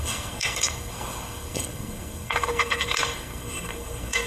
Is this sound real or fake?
fake